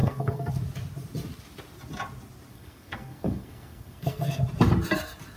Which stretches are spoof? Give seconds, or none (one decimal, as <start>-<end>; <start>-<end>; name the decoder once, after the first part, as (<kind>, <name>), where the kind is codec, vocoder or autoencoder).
0.0-0.5 (codec, SNAC); 2.5-4.4